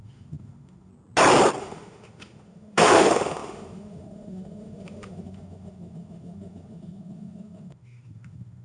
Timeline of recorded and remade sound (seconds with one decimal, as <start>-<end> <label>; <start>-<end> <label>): 0.0-0.9 remade; 0.9-1.6 recorded; 1.6-8.6 remade